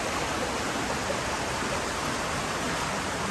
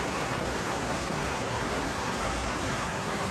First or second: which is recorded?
first